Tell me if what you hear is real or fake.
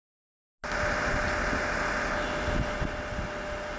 real